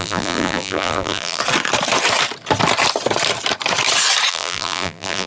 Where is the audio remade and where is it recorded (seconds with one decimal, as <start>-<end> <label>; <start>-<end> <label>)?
0.0-1.4 remade; 1.4-4.3 recorded; 4.3-5.3 remade